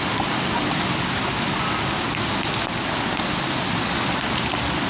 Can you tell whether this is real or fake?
real